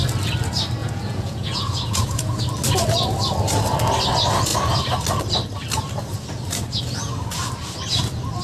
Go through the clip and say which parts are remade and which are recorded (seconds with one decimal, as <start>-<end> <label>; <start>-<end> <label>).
0.0-0.8 recorded; 0.8-2.4 remade; 2.4-8.4 recorded